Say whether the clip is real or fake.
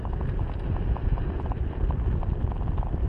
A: real